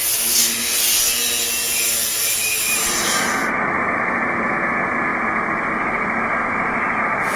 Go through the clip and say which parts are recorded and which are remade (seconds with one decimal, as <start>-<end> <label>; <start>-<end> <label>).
0.0-7.4 recorded